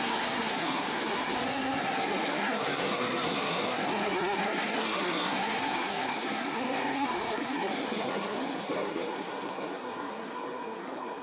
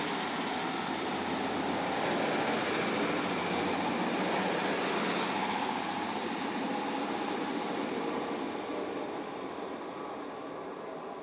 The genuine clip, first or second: second